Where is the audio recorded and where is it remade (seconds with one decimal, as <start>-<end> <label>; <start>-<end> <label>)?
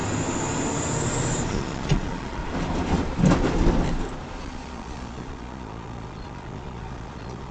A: 0.0-1.5 recorded; 1.5-2.4 remade; 2.4-4.4 recorded; 4.4-7.5 remade